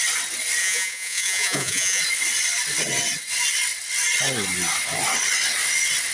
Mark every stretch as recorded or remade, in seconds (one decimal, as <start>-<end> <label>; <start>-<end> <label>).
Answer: 0.0-0.6 recorded; 0.6-2.0 remade; 2.0-6.1 recorded